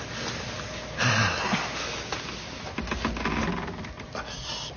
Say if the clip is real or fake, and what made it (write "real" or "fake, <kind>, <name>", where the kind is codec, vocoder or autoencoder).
real